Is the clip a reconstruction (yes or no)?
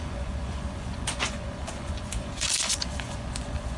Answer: yes